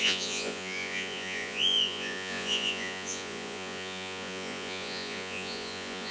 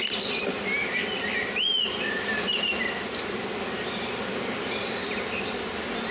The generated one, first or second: first